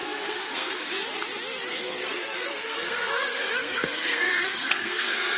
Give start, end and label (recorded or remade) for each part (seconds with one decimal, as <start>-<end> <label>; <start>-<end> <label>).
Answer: 0.0-0.9 remade; 0.9-1.7 recorded; 1.7-5.4 remade